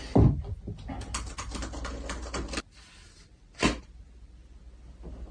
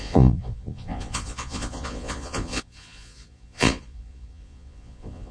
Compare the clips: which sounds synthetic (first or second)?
second